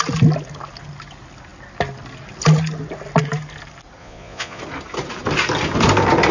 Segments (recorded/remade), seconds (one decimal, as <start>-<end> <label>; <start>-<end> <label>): 0.0-4.0 recorded; 4.0-4.6 remade; 4.6-6.3 recorded